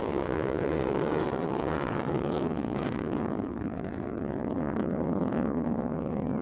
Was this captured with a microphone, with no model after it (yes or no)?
no